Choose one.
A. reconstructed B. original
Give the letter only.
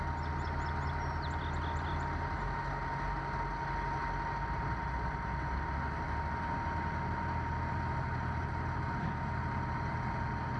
B